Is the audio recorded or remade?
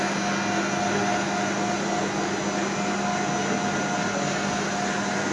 recorded